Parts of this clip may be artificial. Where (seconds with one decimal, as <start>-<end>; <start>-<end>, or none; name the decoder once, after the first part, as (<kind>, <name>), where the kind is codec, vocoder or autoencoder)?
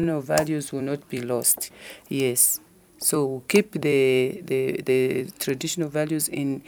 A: 0.0-1.7 (vocoder, BigVGAN v2); 2.6-5.4